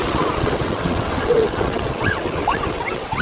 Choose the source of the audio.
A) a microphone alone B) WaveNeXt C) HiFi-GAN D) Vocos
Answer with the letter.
B